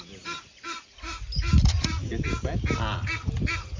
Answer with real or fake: real